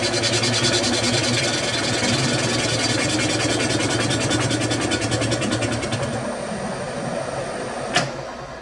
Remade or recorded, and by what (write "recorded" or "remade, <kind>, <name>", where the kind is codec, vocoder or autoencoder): recorded